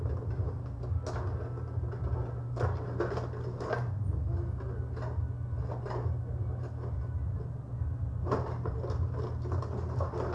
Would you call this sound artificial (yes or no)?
no